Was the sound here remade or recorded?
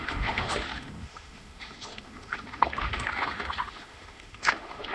remade